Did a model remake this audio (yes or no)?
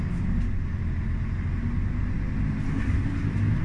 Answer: no